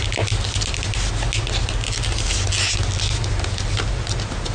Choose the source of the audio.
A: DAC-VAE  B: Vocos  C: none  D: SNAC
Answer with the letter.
C